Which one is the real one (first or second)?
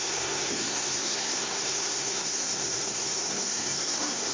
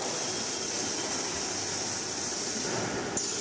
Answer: second